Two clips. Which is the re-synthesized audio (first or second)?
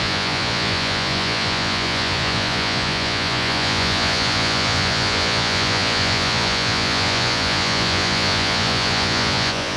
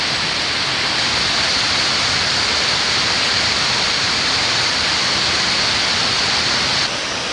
first